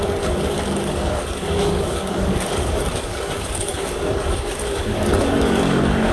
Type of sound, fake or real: fake